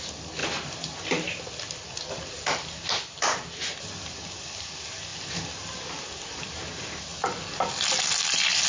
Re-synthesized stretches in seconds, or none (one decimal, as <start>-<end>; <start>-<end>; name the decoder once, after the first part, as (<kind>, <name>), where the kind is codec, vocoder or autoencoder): none